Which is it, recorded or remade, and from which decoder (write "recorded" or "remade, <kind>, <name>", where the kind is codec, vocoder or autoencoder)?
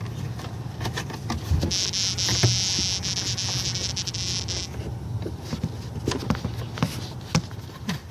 recorded